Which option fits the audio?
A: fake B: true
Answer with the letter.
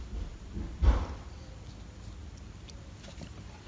B